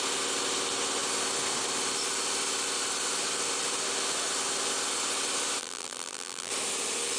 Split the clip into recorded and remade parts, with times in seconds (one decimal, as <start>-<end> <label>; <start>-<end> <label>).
0.0-5.6 recorded; 5.6-6.5 remade; 6.5-7.2 recorded